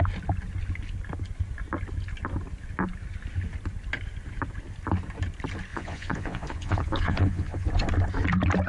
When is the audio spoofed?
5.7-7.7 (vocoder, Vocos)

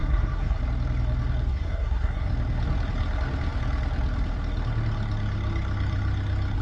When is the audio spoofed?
0.0-0.6 (codec, SNAC); 1.5-2.3

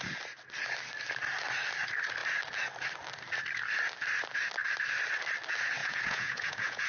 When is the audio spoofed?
5.8-6.9 (vocoder, Vocos)